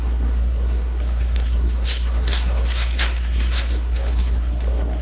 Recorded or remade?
remade